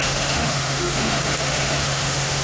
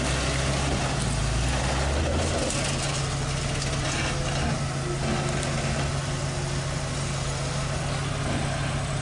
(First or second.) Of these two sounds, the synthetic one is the first